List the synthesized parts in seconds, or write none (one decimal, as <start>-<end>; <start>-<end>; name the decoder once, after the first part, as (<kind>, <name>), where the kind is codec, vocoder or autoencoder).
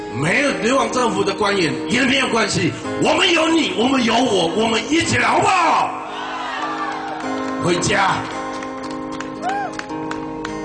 none